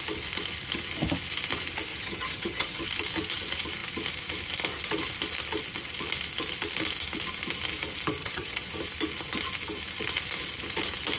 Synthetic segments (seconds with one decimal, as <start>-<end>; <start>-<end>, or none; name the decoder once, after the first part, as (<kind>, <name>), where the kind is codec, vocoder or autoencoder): 1.9-2.8 (vocoder, HiFi-GAN); 8.2-8.7